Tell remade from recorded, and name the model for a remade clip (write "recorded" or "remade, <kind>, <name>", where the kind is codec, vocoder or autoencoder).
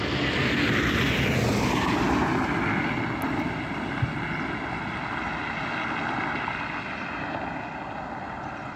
recorded